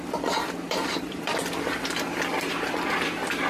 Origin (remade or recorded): remade